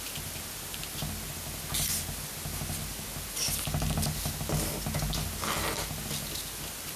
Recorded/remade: recorded